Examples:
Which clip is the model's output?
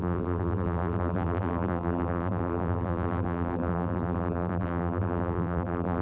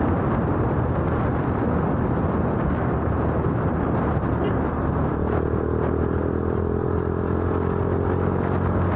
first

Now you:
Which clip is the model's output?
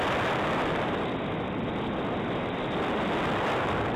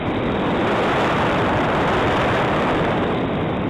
second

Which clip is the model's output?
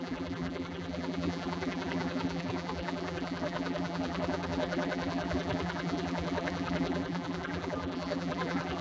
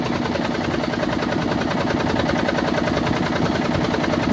first